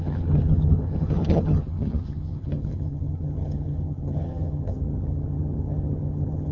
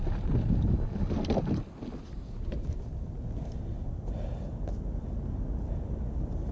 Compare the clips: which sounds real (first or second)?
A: second